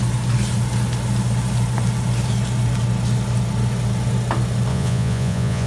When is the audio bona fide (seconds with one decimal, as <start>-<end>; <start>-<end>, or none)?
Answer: 0.0-4.7

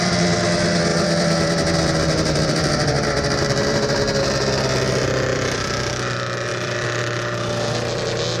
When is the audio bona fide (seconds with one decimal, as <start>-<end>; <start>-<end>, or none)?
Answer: 0.0-0.9; 4.2-5.3; 5.9-6.5; 7.0-8.4

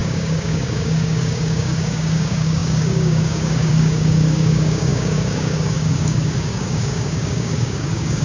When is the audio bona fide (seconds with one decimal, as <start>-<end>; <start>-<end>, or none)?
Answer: none

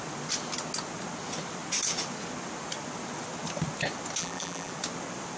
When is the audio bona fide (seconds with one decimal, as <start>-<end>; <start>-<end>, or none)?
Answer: 0.0-4.2; 4.7-5.4